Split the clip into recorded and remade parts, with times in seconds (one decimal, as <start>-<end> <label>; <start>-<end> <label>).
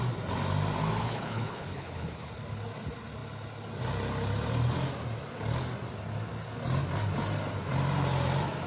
0.0-1.0 recorded; 1.0-2.3 remade; 2.3-8.7 recorded